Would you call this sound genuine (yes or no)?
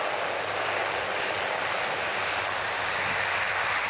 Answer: yes